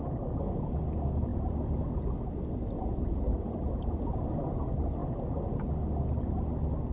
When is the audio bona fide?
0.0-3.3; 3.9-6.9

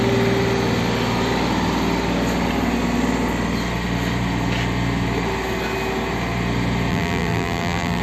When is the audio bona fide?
0.0-6.9